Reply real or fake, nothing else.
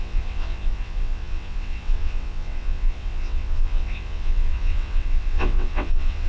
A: fake